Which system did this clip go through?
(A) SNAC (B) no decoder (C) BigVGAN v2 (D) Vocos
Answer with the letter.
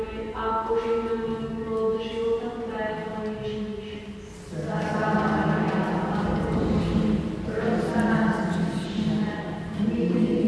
B